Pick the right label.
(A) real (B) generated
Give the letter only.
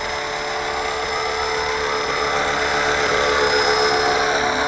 A